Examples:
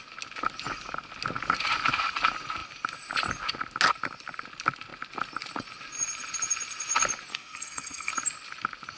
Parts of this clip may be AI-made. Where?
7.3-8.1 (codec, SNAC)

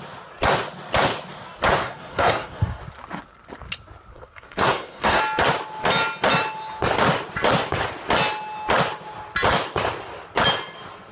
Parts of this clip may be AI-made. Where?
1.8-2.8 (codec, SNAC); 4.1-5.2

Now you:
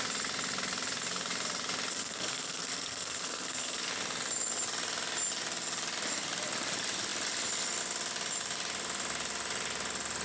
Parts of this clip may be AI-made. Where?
1.9-3.9 (codec, SNAC)